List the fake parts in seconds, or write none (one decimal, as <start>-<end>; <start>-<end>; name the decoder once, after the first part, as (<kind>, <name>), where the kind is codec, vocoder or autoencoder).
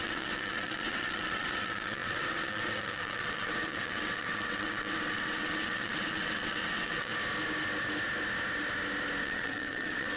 0.0-7.1 (vocoder, WaveNeXt); 9.2-10.2